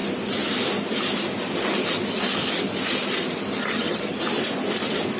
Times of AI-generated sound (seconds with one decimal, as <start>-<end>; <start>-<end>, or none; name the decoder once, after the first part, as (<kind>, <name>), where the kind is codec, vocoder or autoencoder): 3.6-4.2 (vocoder, HiFi-GAN)